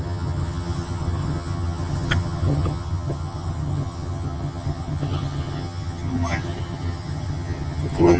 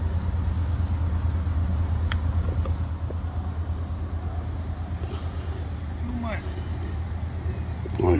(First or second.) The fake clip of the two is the first